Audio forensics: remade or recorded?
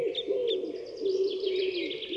recorded